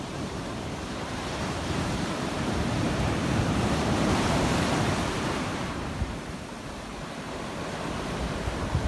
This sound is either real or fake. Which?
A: fake